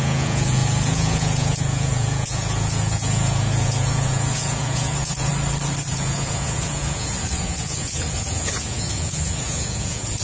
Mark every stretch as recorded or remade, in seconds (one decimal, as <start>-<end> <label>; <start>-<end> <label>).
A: 0.0-5.3 remade; 5.3-5.9 recorded; 5.9-10.2 remade